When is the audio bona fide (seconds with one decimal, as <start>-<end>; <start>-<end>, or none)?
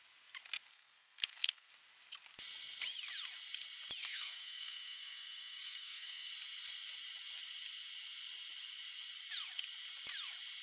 0.0-0.7; 1.7-4.0; 6.3-10.6